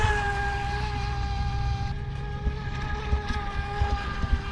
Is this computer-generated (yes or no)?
no